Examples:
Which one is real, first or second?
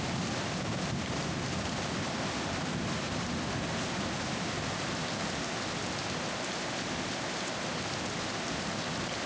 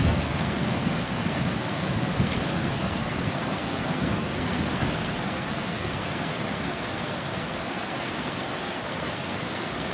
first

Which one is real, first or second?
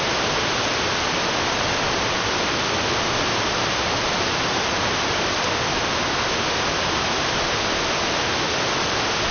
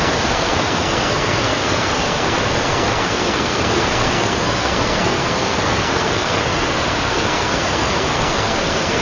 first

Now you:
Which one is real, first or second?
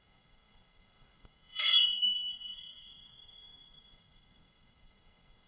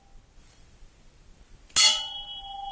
second